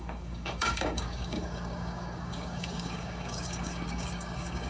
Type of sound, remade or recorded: remade